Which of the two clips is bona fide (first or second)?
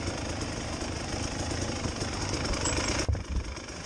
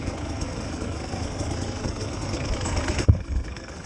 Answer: first